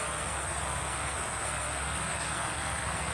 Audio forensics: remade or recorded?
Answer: remade